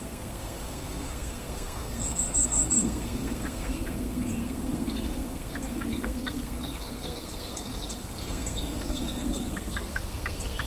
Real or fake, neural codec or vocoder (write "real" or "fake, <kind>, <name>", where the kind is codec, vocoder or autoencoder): fake, codec, SNAC